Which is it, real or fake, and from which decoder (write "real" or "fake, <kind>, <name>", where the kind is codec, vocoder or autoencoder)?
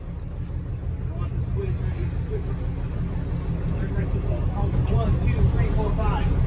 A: real